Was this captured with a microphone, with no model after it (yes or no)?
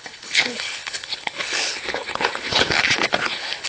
no